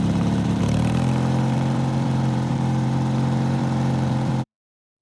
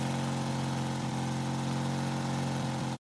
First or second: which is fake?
first